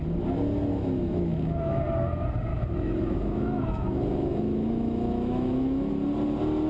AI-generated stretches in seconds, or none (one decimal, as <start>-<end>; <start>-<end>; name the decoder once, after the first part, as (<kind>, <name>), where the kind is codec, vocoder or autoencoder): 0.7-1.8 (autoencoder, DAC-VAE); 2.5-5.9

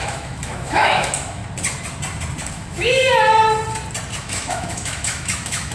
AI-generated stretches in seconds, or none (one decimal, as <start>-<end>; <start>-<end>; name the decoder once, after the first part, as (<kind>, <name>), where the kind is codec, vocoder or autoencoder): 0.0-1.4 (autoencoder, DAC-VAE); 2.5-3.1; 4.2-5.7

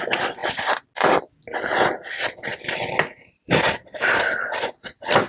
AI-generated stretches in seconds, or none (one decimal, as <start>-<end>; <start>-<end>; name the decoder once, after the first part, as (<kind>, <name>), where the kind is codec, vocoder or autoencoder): none